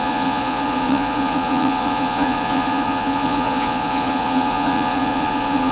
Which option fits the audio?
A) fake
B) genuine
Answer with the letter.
A